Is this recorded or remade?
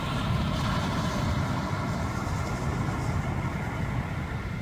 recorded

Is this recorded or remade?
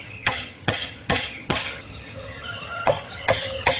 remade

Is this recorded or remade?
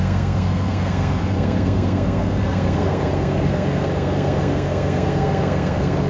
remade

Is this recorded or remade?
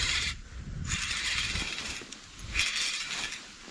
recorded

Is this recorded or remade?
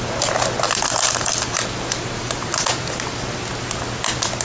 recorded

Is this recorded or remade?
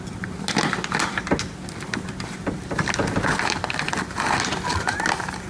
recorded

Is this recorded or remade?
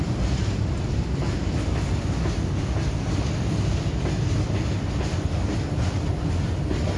recorded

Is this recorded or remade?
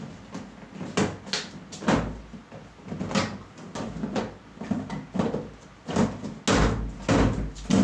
recorded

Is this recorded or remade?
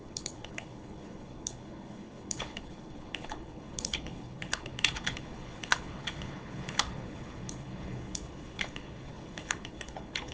remade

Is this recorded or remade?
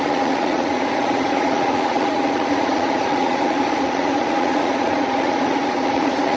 remade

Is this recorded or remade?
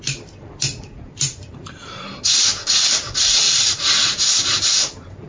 remade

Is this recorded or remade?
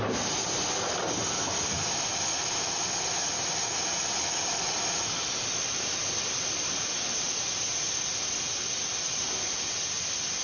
recorded